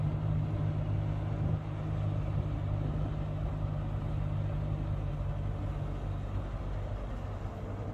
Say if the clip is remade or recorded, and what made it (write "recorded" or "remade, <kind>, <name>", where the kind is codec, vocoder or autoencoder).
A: recorded